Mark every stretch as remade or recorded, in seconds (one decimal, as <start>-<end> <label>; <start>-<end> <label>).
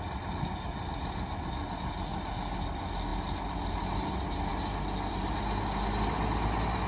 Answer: 0.0-6.9 recorded